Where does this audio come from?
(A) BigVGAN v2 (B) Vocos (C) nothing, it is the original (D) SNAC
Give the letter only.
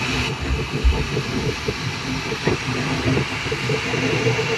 C